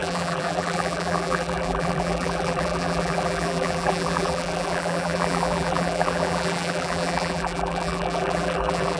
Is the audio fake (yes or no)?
yes